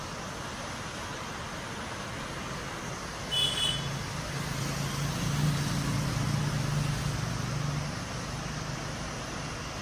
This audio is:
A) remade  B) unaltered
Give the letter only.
B